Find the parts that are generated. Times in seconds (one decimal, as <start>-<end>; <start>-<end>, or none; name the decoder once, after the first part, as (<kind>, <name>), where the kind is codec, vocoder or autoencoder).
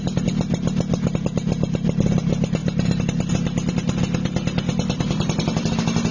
none